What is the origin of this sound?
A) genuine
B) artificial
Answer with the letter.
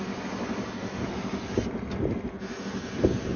A